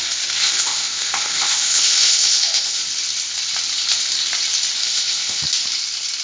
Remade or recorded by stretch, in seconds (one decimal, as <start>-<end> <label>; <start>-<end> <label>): 0.0-0.4 recorded; 0.4-2.8 remade; 2.8-4.8 recorded; 4.8-5.4 remade; 5.4-6.2 recorded